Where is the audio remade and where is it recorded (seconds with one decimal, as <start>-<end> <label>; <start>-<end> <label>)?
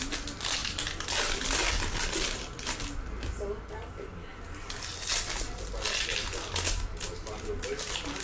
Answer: 0.0-8.2 recorded